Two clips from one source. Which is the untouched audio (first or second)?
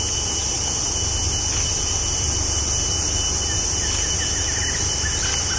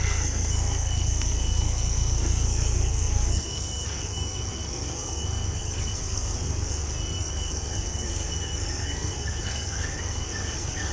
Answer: first